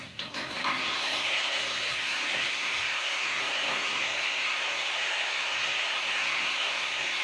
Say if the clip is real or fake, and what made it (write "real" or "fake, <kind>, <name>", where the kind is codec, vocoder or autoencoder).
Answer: fake, codec, SNAC